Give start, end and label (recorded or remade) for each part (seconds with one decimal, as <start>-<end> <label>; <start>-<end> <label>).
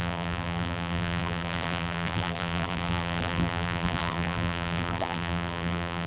0.0-6.1 remade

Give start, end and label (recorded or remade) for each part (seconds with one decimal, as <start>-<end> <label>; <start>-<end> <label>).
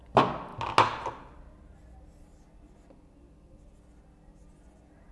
0.0-5.1 recorded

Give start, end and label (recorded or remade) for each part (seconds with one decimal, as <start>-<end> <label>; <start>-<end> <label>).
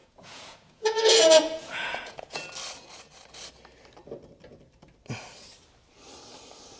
0.0-2.4 remade; 2.4-6.8 recorded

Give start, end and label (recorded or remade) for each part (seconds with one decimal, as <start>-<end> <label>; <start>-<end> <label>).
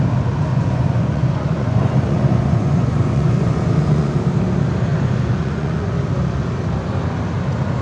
0.0-0.5 recorded; 0.5-4.1 remade; 4.1-4.9 recorded; 4.9-5.9 remade; 5.9-7.8 recorded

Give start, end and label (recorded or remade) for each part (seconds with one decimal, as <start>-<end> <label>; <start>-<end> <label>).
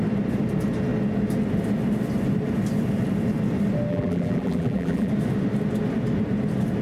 0.0-3.9 recorded; 3.9-5.1 remade; 5.1-6.8 recorded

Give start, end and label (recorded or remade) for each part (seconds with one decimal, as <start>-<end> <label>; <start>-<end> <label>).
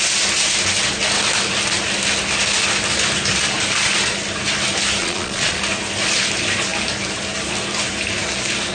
0.0-5.0 recorded; 5.0-5.6 remade; 5.6-8.7 recorded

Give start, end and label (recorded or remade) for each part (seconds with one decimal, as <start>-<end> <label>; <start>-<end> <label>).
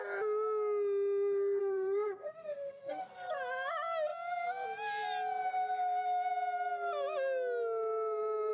0.0-1.6 recorded; 1.6-3.3 remade; 3.3-8.5 recorded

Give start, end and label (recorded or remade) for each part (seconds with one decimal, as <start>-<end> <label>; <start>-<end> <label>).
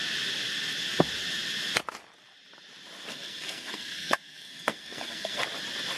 0.0-3.1 recorded; 3.1-5.4 remade; 5.4-6.0 recorded